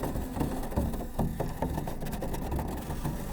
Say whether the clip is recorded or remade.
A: recorded